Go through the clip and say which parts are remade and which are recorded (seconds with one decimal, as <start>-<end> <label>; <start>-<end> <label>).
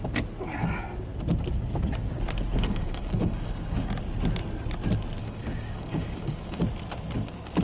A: 0.0-2.6 recorded; 2.6-3.9 remade; 3.9-5.2 recorded; 5.2-6.6 remade; 6.6-7.6 recorded